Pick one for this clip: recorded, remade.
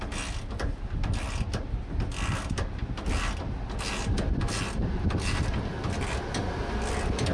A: recorded